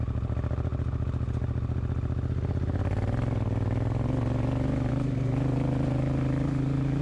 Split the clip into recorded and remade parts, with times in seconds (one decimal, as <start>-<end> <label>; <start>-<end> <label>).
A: 0.0-7.0 recorded